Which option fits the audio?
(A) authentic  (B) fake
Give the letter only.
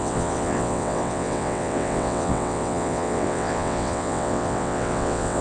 B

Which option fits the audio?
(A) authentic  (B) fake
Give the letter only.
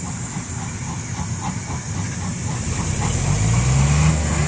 A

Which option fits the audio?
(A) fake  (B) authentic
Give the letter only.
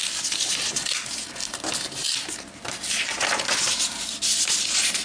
B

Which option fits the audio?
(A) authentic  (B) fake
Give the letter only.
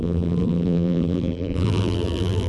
B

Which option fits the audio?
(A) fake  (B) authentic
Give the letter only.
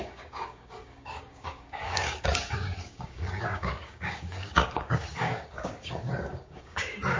A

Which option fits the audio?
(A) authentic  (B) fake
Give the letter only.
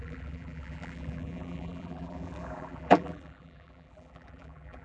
B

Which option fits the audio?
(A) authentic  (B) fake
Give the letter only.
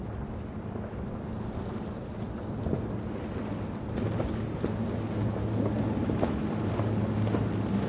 A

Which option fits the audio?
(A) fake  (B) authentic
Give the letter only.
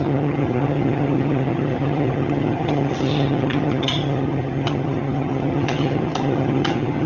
A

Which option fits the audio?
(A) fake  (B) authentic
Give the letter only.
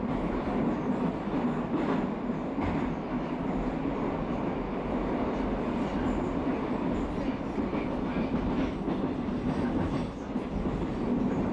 B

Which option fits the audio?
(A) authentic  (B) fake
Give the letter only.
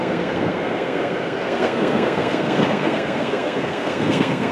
B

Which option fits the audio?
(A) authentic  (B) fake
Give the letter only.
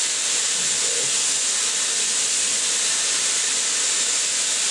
A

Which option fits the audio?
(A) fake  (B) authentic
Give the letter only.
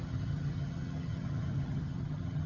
A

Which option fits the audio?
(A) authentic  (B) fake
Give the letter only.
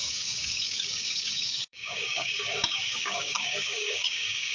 B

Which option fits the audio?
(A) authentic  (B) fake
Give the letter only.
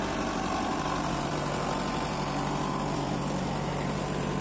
B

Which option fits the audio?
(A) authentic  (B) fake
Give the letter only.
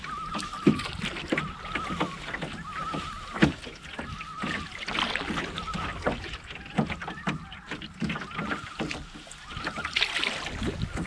A